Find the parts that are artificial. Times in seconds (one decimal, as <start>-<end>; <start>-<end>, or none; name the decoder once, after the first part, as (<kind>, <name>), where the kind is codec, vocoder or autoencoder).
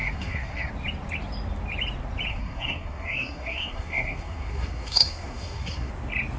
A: 0.0-0.7 (codec, SNAC); 2.3-5.9